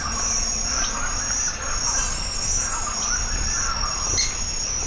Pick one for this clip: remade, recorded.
recorded